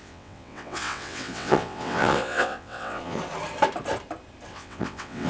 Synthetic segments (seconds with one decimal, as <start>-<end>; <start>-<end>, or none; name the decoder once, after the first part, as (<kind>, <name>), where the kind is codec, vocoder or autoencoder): 0.0-3.2 (vocoder, WaveNeXt); 4.5-5.3